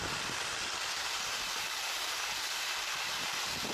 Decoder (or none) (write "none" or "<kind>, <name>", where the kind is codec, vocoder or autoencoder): none